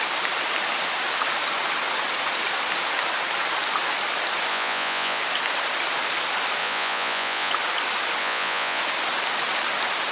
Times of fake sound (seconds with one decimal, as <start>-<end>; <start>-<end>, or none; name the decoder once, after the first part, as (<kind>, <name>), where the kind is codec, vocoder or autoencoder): 4.5-5.2 (vocoder, Vocos); 6.6-7.5; 8.2-8.8